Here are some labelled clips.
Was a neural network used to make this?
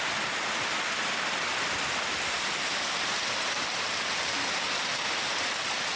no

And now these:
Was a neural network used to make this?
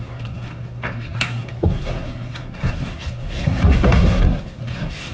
yes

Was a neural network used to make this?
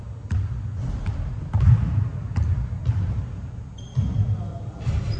no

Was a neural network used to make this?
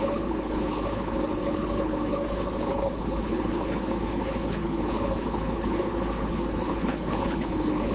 yes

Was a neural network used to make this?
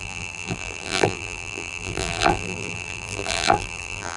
yes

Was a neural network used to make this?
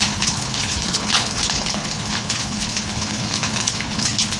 yes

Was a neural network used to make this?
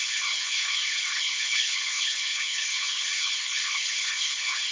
yes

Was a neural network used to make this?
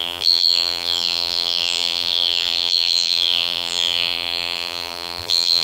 yes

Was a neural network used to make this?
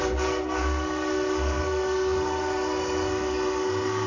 yes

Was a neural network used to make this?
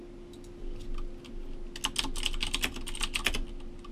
no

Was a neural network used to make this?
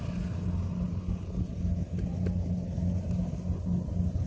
no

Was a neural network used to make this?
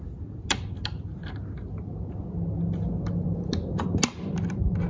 no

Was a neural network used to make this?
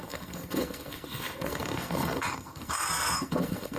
yes